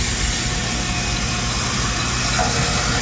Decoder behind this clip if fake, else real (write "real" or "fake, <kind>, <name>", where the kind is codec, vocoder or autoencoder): real